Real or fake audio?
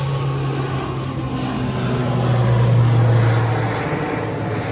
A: real